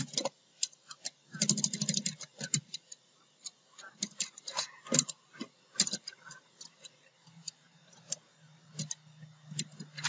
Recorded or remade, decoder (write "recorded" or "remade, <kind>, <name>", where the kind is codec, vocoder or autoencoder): recorded